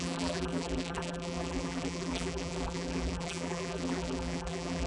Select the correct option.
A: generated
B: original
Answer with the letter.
A